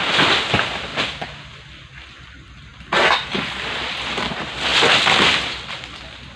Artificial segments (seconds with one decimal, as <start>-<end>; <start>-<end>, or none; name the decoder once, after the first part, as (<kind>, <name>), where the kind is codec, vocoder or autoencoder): none